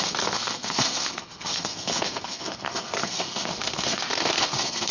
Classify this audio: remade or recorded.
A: remade